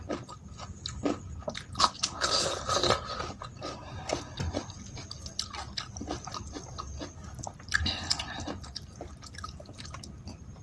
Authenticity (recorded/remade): recorded